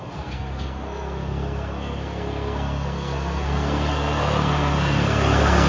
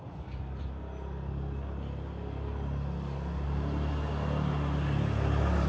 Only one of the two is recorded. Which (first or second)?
second